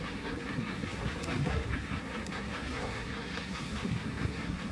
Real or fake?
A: fake